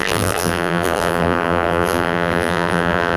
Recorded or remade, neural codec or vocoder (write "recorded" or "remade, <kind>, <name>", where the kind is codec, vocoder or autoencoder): remade, vocoder, BigVGAN v2